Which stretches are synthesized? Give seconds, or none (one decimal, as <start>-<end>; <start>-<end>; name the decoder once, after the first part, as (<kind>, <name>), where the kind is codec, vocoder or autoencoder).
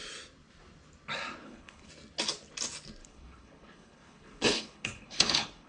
1.4-1.9 (codec, HILCodec); 3.0-5.7